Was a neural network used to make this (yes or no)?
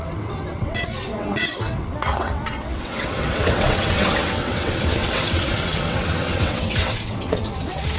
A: yes